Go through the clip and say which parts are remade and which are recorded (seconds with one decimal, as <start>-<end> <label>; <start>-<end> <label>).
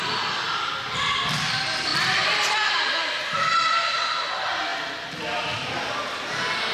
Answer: 0.0-6.7 recorded